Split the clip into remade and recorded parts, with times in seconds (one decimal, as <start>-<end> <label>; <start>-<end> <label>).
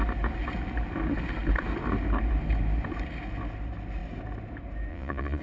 0.0-4.9 recorded; 4.9-5.4 remade